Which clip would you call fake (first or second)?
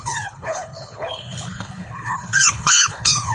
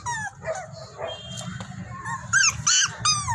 first